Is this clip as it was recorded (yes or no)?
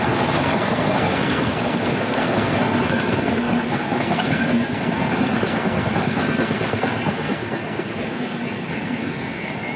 no